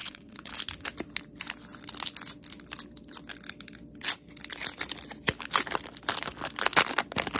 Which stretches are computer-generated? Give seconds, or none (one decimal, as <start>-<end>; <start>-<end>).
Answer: 0.0-0.5